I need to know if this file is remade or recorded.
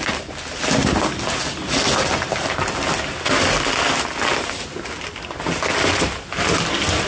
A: recorded